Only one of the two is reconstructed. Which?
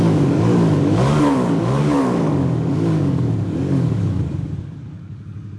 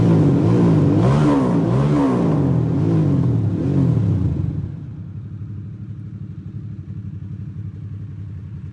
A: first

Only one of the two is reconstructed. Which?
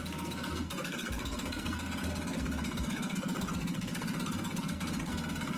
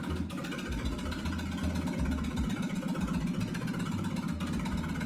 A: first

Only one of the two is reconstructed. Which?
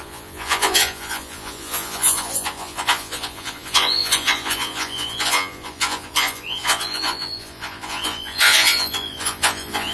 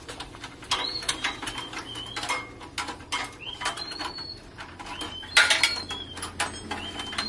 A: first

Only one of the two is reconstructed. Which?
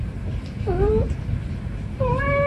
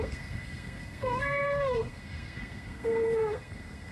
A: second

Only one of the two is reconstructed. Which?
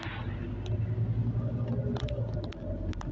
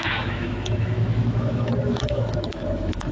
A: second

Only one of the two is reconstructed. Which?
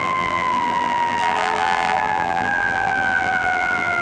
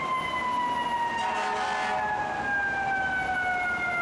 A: first